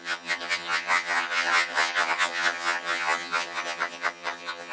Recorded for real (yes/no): no